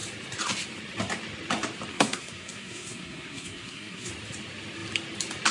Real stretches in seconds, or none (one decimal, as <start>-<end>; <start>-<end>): 0.0-1.9; 4.1-5.5